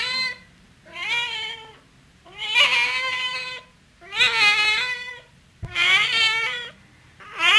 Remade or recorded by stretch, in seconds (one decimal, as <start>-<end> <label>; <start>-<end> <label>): 0.0-3.3 remade; 3.3-5.1 recorded; 5.1-7.6 remade